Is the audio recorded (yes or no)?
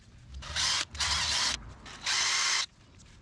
yes